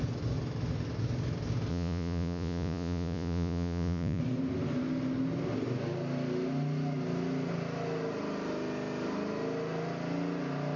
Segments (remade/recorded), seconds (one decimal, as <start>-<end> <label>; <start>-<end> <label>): 0.0-1.7 recorded; 1.7-4.2 remade; 4.2-10.8 recorded